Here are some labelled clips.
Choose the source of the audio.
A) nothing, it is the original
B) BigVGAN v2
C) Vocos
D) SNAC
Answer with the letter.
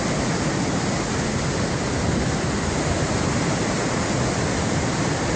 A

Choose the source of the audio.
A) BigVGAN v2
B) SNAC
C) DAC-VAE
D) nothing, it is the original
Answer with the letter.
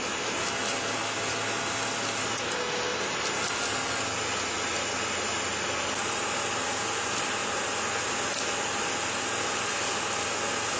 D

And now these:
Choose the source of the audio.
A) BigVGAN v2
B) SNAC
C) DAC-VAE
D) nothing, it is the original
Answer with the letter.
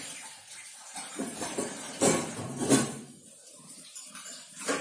A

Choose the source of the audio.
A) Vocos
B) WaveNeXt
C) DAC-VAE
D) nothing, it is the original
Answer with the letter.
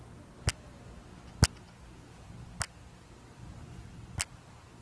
D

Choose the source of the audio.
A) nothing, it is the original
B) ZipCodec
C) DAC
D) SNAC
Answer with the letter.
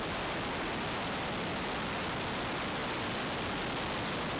A